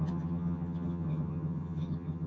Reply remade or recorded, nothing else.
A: remade